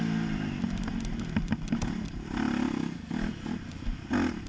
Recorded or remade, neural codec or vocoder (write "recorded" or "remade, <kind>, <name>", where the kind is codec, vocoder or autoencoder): recorded